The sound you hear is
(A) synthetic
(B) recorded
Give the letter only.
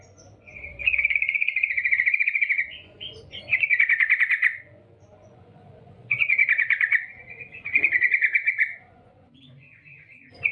A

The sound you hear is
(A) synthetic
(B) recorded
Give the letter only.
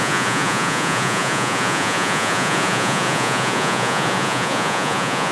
A